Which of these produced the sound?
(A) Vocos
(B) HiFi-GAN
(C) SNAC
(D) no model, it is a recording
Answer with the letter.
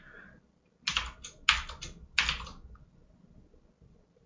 D